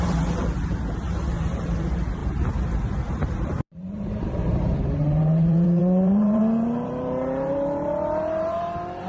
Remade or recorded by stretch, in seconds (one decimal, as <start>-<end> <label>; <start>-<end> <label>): 0.0-2.2 remade; 2.2-3.0 recorded; 3.0-9.1 remade